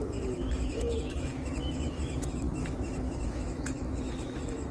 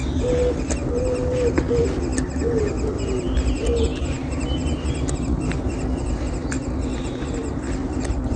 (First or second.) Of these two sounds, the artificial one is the first